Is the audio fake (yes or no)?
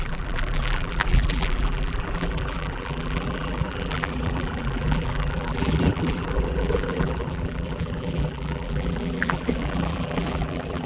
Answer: yes